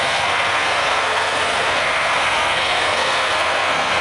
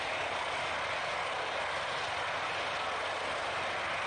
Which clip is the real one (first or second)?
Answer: second